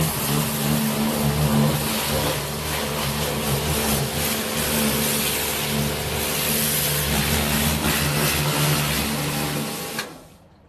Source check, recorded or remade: recorded